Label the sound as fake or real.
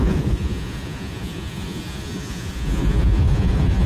fake